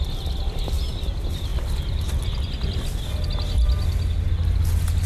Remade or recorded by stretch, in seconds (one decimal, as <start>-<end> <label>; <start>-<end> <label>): 0.0-5.1 recorded